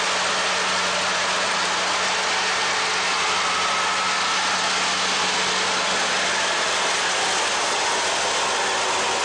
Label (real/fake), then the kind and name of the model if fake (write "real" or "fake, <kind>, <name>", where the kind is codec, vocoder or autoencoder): real